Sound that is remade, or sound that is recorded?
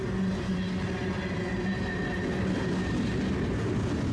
recorded